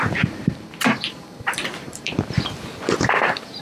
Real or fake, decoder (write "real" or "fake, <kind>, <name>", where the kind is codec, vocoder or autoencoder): fake, vocoder, BigVGAN v2